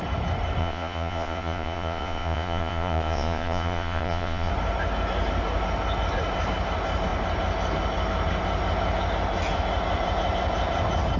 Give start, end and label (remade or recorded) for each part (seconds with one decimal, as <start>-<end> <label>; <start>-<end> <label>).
0.0-0.6 recorded; 0.6-4.5 remade; 4.5-11.2 recorded